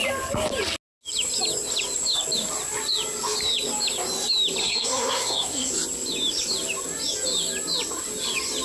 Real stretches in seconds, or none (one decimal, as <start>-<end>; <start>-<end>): 0.0-4.6; 5.7-8.6